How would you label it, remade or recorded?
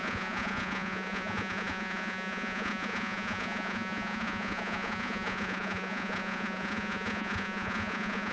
remade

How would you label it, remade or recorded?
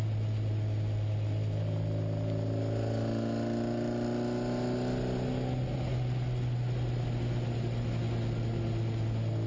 recorded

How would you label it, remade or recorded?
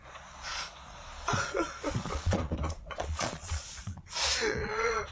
remade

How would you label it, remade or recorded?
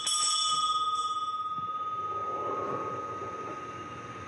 recorded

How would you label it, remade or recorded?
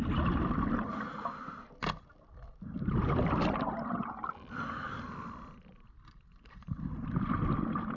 recorded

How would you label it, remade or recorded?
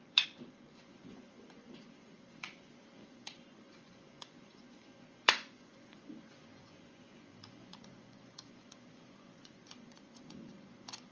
remade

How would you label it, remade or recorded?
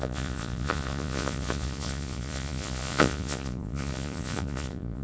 remade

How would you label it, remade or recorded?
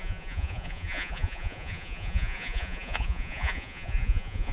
remade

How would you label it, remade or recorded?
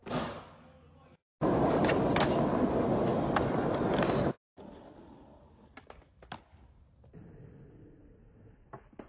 recorded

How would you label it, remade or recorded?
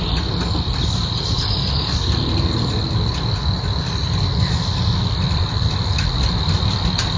recorded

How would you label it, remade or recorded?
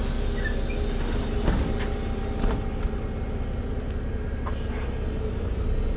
recorded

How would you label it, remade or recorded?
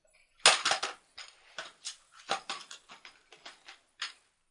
recorded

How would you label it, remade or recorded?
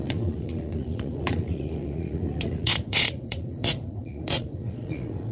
remade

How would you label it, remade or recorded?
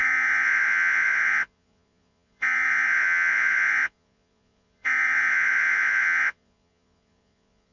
remade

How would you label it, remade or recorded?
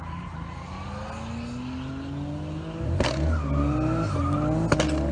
recorded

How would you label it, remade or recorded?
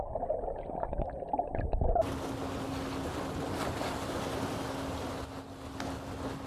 recorded